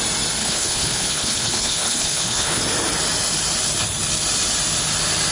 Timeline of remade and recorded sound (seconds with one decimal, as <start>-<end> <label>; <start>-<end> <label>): 0.0-0.4 recorded; 0.4-2.6 remade; 2.6-5.3 recorded